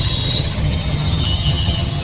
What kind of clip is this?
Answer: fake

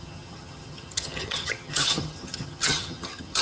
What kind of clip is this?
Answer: fake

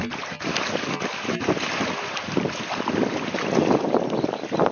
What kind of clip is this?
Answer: real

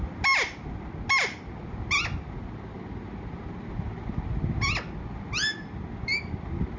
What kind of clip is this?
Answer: real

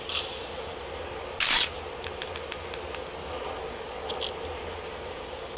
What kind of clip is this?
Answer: real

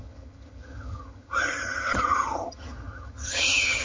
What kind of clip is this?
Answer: fake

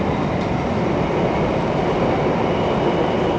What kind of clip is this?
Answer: real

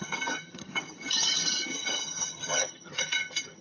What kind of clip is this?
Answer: fake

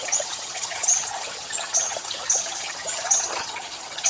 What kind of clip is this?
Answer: fake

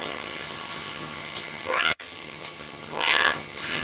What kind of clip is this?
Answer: fake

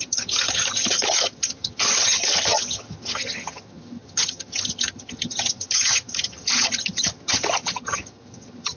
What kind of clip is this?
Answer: fake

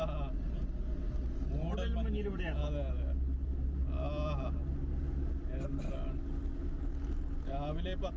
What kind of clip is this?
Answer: real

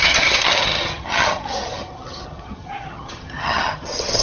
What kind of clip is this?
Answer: fake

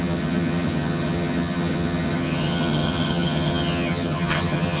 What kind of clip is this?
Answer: fake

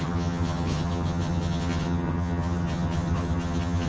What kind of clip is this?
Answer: fake